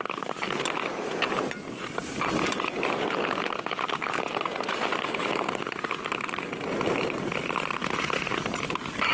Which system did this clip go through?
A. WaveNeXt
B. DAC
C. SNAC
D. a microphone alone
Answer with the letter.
D